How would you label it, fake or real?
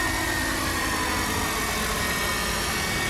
real